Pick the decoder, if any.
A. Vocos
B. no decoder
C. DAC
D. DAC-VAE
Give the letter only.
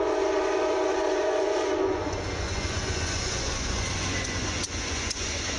A